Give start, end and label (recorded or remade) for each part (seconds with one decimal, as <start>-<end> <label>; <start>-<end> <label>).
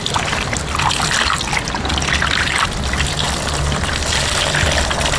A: 0.0-5.2 recorded